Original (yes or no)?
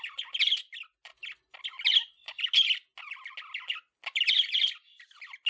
yes